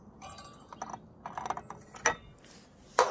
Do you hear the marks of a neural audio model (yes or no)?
no